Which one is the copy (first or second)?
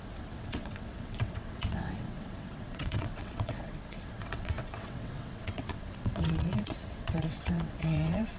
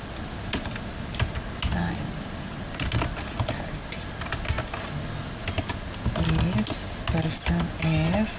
first